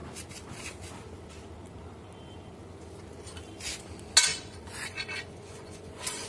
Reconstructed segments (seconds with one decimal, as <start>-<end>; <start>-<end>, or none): 4.3-6.3